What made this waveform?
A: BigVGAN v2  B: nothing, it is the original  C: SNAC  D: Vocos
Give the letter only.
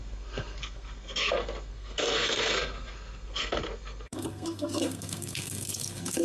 C